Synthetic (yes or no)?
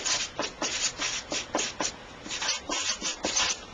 no